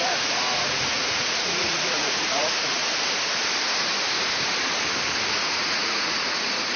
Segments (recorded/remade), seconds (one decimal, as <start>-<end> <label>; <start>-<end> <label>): 0.0-2.8 remade; 2.8-5.3 recorded; 5.3-6.8 remade